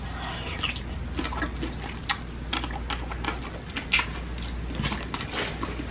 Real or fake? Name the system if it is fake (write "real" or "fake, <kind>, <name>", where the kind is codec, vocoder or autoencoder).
real